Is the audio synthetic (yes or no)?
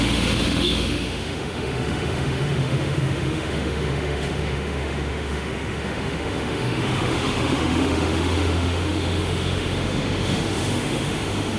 yes